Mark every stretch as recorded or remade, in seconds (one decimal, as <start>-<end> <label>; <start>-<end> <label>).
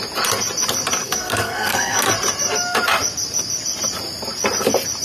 0.0-1.0 recorded; 1.0-2.1 remade; 2.1-5.0 recorded